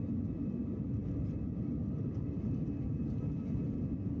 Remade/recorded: recorded